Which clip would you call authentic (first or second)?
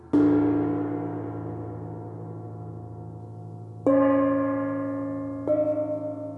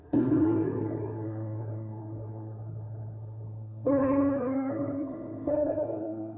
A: first